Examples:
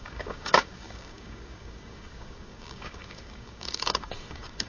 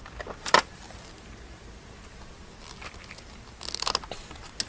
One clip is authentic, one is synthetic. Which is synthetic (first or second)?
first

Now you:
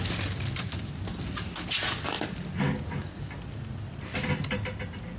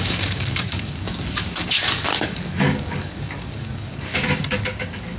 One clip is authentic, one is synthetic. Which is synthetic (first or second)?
second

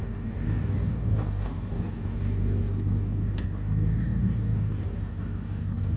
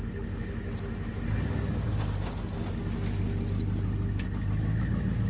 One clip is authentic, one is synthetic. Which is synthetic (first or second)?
first